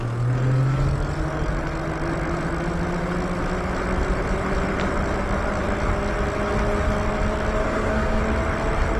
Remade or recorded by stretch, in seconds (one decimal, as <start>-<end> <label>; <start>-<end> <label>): 0.0-7.6 recorded; 7.6-8.2 remade; 8.2-9.0 recorded

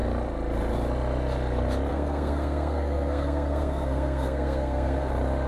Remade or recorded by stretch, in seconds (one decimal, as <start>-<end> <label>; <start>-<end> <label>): 0.0-1.9 recorded; 1.9-5.1 remade; 5.1-5.5 recorded

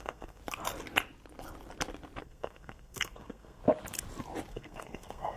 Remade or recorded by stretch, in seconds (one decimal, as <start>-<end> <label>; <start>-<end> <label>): 0.0-0.4 remade; 0.4-2.2 recorded; 2.2-3.6 remade; 3.6-4.5 recorded; 4.5-5.4 remade

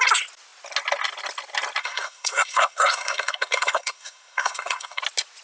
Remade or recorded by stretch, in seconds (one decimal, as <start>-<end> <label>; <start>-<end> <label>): 0.0-1.8 recorded; 1.8-5.0 remade; 5.0-5.4 recorded

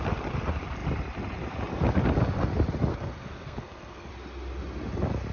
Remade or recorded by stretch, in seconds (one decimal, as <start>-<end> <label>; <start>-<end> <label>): 0.0-2.9 recorded; 2.9-4.1 remade; 4.1-5.3 recorded

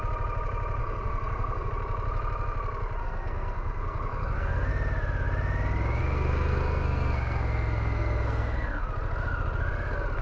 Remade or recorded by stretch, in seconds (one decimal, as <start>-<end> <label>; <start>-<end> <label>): 0.0-0.8 recorded; 0.8-1.7 remade; 1.7-3.0 recorded; 3.0-4.7 remade; 4.7-6.0 recorded; 6.0-8.9 remade; 8.9-10.2 recorded